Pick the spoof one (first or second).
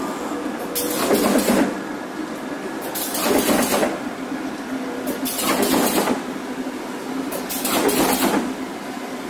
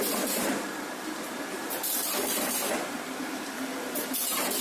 second